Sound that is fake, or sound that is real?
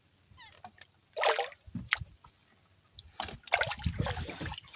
real